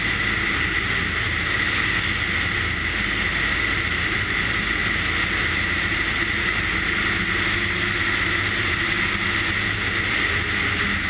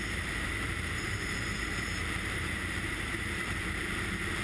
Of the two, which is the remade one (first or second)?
second